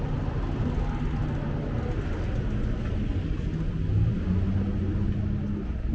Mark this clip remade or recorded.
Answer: recorded